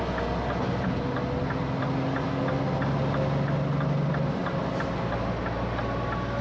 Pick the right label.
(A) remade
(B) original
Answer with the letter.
B